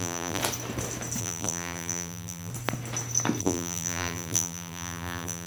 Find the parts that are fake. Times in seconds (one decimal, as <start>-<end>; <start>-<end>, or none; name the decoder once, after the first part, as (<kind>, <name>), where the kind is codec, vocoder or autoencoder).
0.0-0.4 (vocoder, BigVGAN v2); 1.2-2.5; 3.4-5.5